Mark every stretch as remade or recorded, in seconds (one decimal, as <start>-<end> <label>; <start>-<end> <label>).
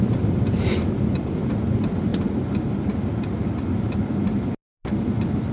0.0-2.1 remade; 2.1-5.5 recorded